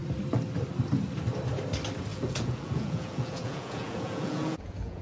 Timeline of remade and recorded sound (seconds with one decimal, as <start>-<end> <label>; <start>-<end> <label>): 0.0-2.1 recorded; 2.1-5.0 remade